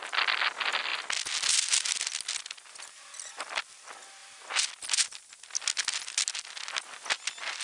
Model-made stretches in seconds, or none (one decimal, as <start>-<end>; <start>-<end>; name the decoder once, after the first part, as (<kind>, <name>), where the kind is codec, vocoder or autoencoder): none